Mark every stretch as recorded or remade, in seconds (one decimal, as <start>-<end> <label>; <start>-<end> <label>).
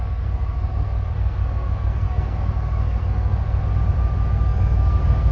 0.0-3.7 remade; 3.7-4.3 recorded; 4.3-5.3 remade